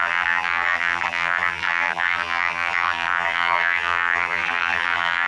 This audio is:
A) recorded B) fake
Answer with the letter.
B